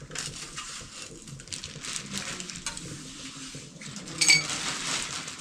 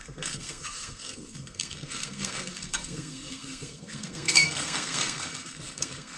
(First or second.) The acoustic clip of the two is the first